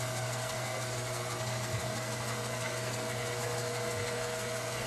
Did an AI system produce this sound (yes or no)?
yes